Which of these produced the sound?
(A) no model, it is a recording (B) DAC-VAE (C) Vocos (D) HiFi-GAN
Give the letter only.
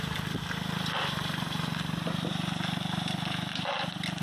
A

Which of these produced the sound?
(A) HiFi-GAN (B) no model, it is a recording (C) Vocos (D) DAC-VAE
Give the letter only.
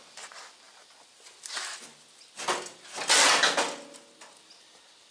B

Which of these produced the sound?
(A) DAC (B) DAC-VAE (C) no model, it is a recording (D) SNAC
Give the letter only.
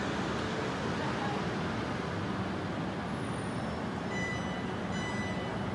C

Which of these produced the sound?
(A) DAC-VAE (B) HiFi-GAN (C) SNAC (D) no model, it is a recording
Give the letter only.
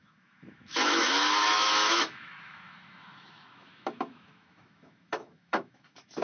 A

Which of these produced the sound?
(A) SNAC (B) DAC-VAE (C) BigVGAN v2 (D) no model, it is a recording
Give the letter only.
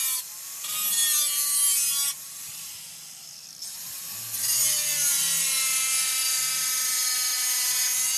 D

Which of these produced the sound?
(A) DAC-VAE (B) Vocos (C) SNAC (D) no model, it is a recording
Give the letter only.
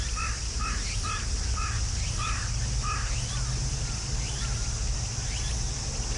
D